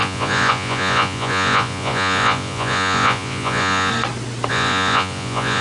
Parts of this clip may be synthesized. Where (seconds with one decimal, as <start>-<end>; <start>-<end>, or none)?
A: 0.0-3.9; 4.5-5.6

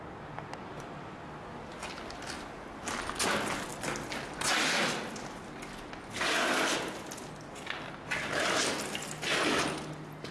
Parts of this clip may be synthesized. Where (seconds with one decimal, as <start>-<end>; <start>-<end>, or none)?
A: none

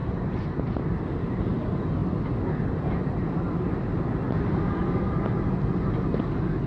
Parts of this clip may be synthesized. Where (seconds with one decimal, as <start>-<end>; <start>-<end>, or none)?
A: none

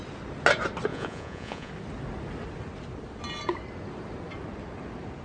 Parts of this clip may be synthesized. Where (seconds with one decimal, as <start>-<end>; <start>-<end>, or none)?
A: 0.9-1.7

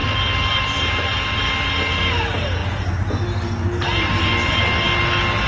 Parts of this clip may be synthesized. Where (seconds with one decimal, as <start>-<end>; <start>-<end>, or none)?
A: none

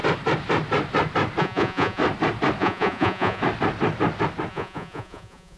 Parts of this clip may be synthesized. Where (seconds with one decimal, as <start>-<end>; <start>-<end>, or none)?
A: 1.4-2.0; 2.6-3.4; 4.5-5.6